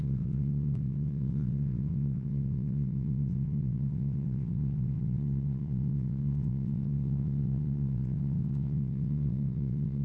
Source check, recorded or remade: remade